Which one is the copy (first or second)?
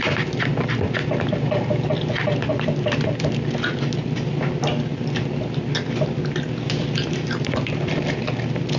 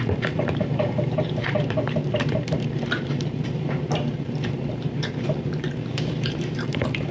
second